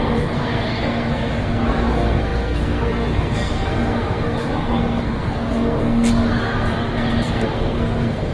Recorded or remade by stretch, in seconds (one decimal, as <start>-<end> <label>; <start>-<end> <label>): 0.0-8.3 remade